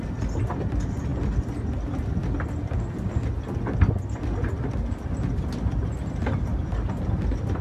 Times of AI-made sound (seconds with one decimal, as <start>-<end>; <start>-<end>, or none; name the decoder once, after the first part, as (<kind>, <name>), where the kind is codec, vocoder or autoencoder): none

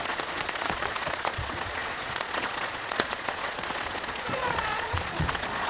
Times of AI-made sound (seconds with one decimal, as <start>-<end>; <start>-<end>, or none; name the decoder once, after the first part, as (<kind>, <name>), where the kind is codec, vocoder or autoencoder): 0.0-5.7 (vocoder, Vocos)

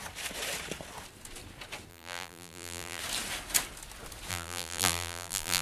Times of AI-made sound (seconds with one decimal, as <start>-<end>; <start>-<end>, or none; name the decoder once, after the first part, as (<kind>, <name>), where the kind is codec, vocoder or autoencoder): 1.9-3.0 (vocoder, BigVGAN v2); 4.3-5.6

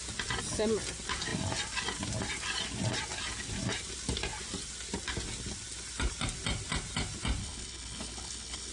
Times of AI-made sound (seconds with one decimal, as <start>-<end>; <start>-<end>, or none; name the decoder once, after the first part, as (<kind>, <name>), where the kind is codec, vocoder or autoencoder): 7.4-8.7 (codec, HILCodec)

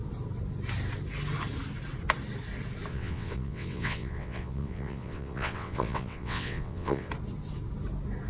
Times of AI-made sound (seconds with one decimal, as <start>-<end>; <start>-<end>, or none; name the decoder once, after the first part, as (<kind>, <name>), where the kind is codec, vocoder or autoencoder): 2.9-7.1 (vocoder, WaveNeXt)